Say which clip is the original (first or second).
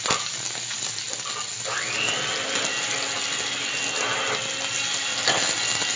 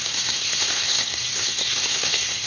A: first